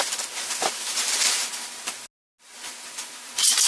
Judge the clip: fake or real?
real